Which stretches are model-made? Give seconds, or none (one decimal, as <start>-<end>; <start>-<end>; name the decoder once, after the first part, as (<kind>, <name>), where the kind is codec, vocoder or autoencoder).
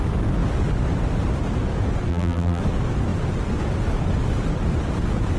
2.1-2.6 (vocoder, BigVGAN v2)